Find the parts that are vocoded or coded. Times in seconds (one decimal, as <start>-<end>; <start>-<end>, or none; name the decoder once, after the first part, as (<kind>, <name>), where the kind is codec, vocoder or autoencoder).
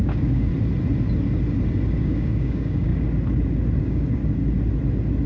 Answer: 0.0-0.5 (codec, DAC); 2.0-2.9; 3.8-4.2